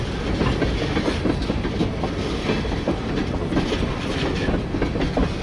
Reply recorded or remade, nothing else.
recorded